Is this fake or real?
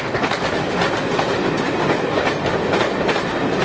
real